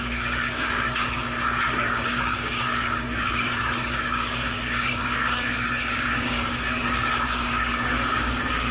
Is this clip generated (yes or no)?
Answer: yes